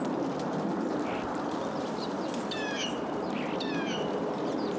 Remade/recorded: recorded